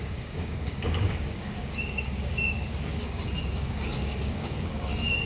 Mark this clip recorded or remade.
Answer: remade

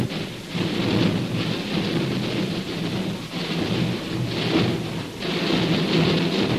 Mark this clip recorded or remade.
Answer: recorded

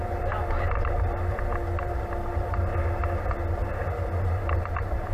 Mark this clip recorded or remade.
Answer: recorded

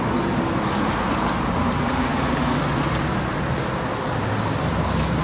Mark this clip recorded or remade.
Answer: recorded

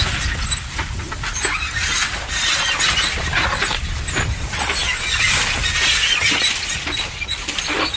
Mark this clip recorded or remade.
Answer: recorded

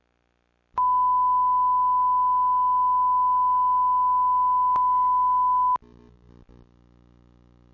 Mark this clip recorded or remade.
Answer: recorded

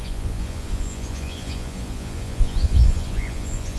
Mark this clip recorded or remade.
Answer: remade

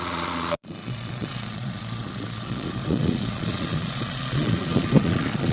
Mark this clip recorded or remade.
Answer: remade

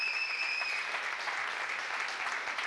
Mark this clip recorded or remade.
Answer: recorded